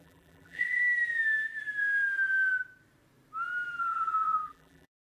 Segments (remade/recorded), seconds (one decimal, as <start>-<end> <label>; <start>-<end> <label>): 0.0-0.8 remade; 0.8-3.8 recorded; 3.8-5.0 remade